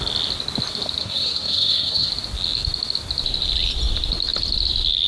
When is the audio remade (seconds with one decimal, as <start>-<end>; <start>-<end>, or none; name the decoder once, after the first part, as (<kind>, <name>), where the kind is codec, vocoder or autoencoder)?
1.0-2.1 (codec, SNAC)